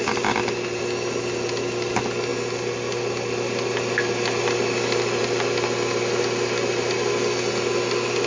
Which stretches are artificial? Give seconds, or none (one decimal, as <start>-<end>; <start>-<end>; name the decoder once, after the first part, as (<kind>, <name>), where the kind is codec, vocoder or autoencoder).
none